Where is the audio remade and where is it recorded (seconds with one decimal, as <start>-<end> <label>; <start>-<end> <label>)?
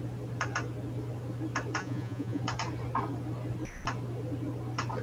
0.0-1.8 recorded; 1.8-2.4 remade; 2.4-5.0 recorded